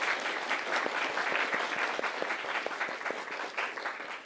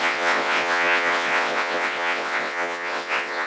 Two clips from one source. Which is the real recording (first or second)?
first